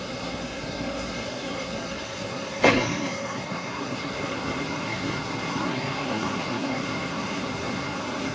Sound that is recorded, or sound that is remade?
remade